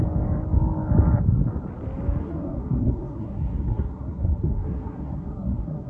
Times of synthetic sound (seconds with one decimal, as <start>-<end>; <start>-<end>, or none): 2.2-5.9